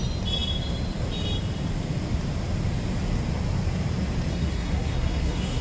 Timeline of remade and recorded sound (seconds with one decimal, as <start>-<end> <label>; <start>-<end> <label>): 0.0-4.3 recorded; 4.3-5.6 remade